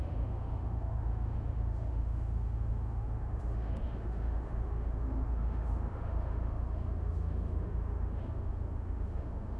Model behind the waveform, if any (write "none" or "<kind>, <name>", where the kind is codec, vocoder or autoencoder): autoencoder, DAC-VAE